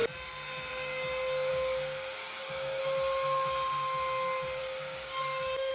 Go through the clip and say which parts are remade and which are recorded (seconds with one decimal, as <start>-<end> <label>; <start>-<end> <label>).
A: 0.0-1.5 recorded; 1.5-2.8 remade; 2.8-4.6 recorded; 4.6-5.7 remade